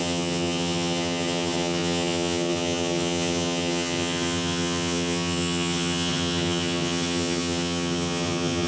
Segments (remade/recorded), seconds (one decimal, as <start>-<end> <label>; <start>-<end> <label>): 0.0-8.7 remade